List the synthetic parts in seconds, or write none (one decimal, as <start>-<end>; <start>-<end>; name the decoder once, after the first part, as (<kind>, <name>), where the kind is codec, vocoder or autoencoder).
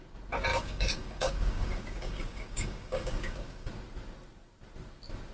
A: 0.5-3.7 (codec, DAC)